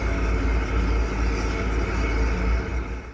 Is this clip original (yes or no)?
yes